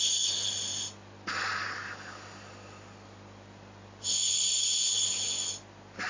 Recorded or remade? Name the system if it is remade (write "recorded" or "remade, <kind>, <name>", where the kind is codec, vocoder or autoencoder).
recorded